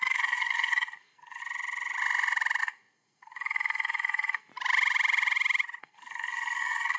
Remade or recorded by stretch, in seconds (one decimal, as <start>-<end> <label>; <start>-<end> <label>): 0.0-1.4 remade; 1.4-2.6 recorded; 2.6-4.5 remade; 4.5-5.8 recorded; 5.8-7.0 remade